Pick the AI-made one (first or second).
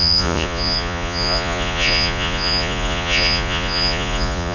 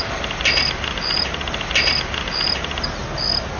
first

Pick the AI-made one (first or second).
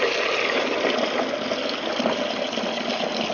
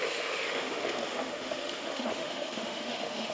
second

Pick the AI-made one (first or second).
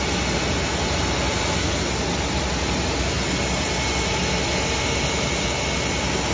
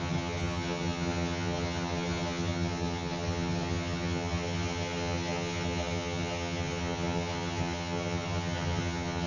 second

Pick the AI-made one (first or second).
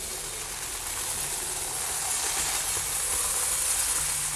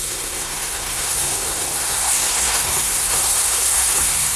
second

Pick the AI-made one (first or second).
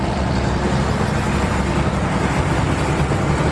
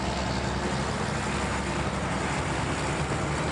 first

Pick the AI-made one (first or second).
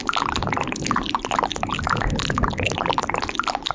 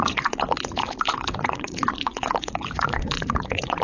second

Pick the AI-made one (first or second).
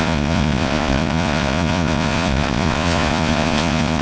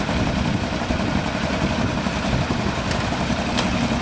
first